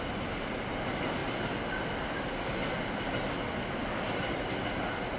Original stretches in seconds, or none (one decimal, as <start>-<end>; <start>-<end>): 0.0-5.2